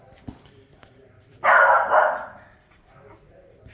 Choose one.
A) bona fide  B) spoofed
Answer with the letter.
B